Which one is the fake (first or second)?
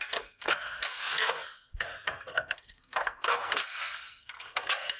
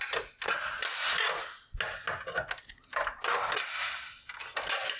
first